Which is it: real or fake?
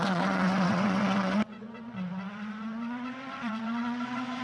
fake